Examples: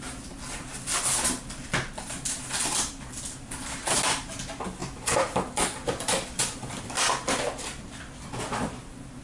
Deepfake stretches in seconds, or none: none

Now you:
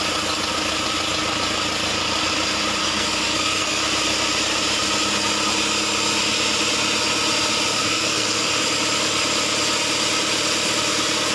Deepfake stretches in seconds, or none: 2.8-3.8; 7.7-8.5

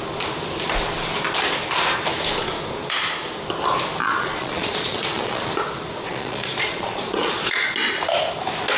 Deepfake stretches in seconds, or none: 4.0-5.5; 6.0-7.7

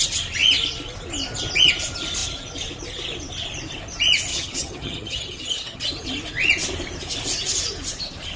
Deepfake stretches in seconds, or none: 4.3-5.9